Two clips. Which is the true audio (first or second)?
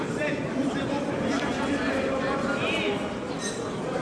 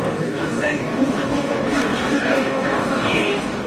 first